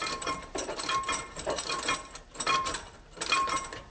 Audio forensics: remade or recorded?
remade